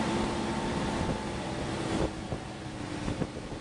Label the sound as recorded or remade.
remade